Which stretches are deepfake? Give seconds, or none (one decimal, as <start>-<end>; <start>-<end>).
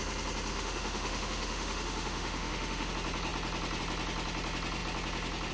0.5-2.9